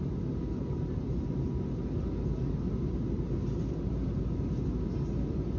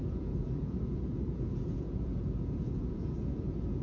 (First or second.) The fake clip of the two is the second